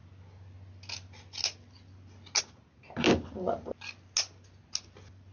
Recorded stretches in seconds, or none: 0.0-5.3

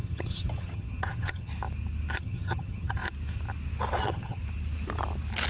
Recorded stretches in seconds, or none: 1.5-2.2; 3.0-4.0; 4.4-5.5

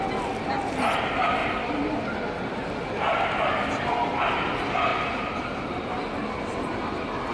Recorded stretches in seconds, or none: 0.0-7.3

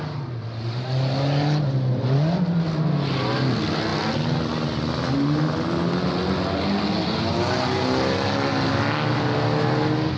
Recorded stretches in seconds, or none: 0.0-10.2

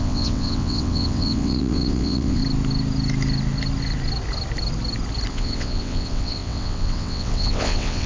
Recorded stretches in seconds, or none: 2.4-5.3